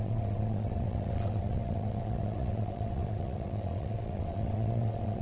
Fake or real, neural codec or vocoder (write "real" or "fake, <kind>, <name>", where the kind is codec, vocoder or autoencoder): fake, vocoder, WaveNeXt